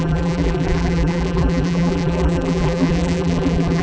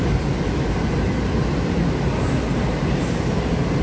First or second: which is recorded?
second